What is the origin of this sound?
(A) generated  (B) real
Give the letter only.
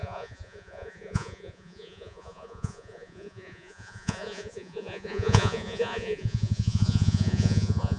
A